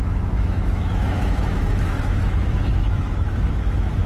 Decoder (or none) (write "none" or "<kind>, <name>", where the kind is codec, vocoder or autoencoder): autoencoder, DAC-VAE